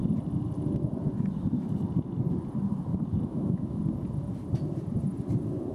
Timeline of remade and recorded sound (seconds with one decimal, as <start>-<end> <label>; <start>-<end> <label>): 0.0-3.3 recorded; 3.3-3.8 remade; 3.8-5.7 recorded